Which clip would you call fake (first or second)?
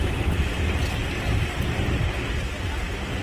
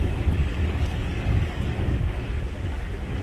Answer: second